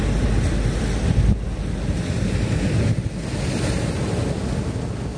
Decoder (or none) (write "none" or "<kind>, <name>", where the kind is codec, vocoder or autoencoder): none